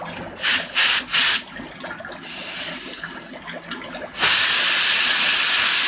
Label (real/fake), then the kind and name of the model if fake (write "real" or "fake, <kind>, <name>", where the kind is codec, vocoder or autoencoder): real